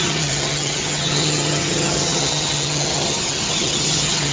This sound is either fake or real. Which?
fake